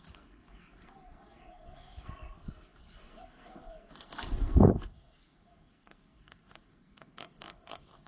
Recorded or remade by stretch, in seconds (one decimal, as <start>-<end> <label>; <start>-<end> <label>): 0.0-8.1 remade